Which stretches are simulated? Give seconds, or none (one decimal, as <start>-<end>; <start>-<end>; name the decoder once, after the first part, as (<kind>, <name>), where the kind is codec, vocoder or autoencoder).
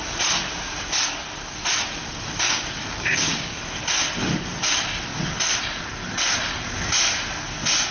2.8-3.6 (codec, DAC)